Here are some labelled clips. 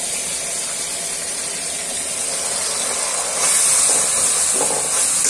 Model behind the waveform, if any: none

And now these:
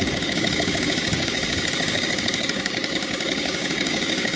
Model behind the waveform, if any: codec, DAC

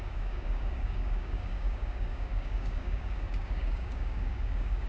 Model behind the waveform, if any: codec, DAC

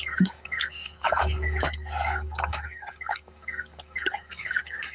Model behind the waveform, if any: codec, DAC